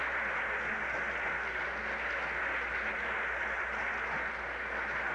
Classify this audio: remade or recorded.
recorded